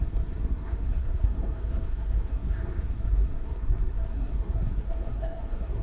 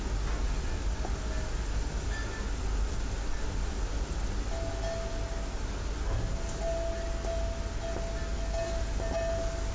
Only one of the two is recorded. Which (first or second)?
second